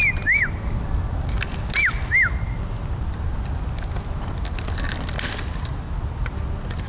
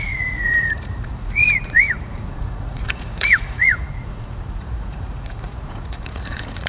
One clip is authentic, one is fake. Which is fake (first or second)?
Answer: second